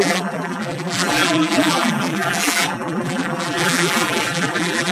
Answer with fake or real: fake